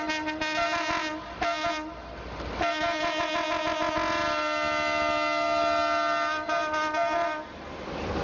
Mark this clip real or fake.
real